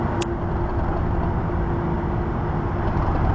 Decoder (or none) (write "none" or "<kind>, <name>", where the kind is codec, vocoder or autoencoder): none